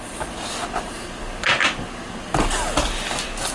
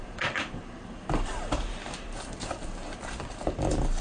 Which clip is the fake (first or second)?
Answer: second